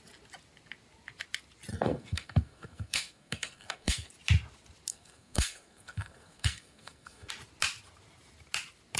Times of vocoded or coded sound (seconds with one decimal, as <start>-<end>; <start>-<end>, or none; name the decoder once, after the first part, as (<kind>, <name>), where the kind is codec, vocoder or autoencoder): 1.7-4.1 (codec, SNAC); 4.9-7.3